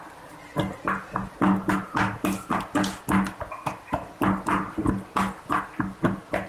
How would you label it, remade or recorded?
recorded